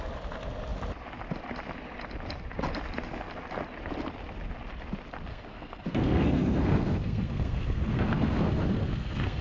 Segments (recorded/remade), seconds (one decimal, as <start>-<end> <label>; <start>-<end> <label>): 0.0-5.3 recorded; 5.3-9.4 remade